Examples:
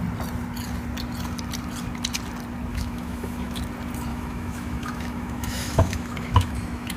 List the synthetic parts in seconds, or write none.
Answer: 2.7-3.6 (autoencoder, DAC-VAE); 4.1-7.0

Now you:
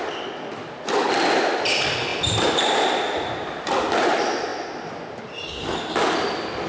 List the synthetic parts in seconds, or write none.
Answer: none